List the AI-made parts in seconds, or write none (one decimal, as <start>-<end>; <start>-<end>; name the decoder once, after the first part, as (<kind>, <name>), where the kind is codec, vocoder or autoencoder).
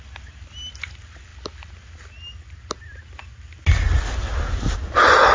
none